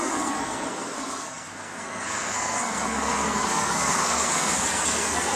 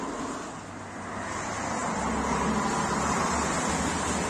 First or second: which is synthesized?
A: first